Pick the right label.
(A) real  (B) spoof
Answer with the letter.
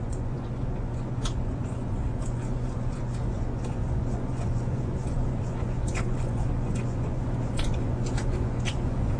B